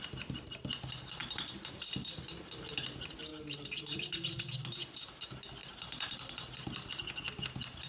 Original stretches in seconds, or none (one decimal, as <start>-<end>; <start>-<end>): 0.0-1.2; 2.2-5.6; 6.9-7.9